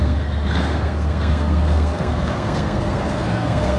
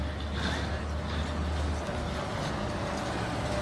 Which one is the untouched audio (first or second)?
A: second